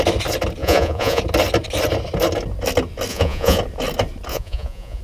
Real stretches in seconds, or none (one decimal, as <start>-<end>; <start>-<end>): 0.0-0.6; 1.2-3.1; 3.6-4.3